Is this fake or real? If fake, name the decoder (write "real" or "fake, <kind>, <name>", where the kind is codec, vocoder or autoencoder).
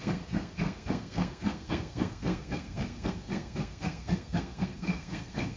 fake, codec, SNAC